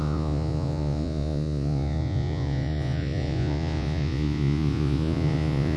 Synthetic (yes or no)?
yes